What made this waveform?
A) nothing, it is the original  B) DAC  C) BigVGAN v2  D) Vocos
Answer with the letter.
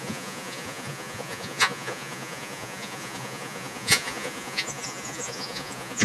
D